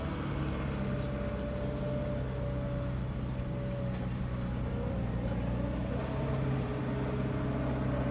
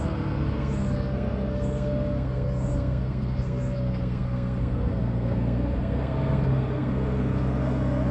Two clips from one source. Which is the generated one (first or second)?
second